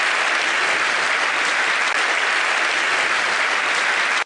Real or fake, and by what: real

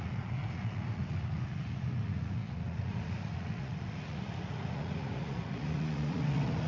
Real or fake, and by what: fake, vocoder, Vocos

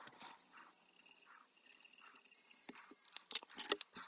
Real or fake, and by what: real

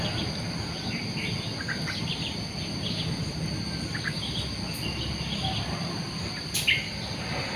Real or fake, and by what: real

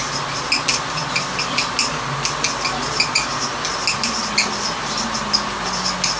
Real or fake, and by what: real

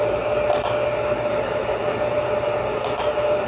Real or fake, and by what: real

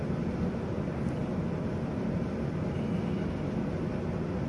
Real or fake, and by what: real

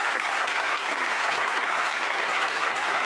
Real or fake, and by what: fake, codec, SNAC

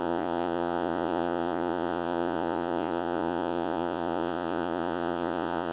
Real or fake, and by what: fake, vocoder, Vocos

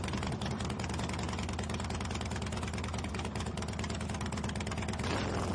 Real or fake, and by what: real